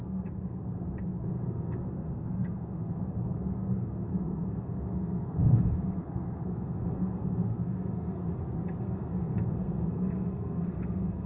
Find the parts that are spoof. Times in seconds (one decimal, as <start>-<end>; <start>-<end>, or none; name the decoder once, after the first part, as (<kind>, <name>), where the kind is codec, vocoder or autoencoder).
0.0-8.2 (codec, SNAC); 8.8-11.3